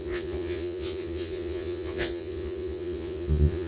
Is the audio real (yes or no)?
no